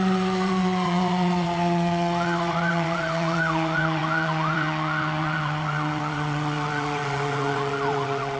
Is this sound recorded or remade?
remade